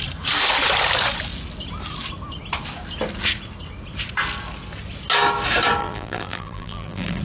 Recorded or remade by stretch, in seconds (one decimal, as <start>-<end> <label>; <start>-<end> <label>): 0.0-5.8 recorded; 5.8-7.2 remade